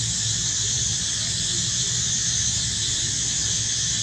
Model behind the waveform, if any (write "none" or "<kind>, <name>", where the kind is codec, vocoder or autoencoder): none